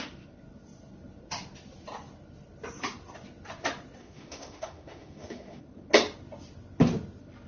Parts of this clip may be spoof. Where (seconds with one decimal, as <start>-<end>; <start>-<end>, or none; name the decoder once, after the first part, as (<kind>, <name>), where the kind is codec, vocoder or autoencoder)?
4.0-5.6 (autoencoder, DAC-VAE)